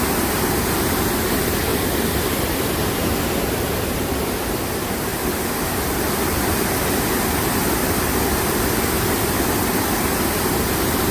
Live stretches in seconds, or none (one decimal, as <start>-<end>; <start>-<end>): 0.0-1.7; 2.7-5.1; 6.9-7.8; 9.4-11.1